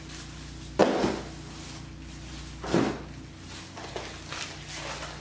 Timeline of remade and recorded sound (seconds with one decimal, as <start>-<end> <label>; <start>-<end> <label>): 0.0-5.2 recorded